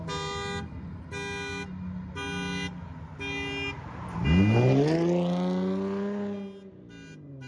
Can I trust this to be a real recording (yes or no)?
yes